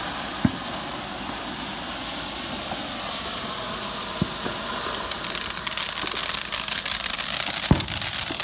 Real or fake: real